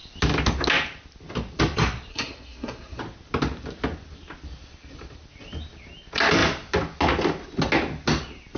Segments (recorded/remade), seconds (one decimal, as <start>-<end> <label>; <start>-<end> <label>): 0.0-2.1 recorded; 2.1-3.0 remade; 3.0-8.6 recorded